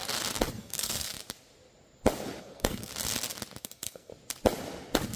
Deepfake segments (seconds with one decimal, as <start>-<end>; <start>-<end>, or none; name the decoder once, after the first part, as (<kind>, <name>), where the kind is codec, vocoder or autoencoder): 0.5-1.1 (codec, SNAC); 2.4-2.9; 3.6-4.1